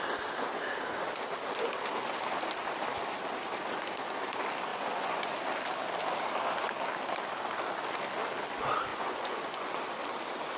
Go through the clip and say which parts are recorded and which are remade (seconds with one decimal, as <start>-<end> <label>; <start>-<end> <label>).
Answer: 0.0-4.7 recorded; 4.7-5.3 remade; 5.3-8.9 recorded; 8.9-9.7 remade; 9.7-10.6 recorded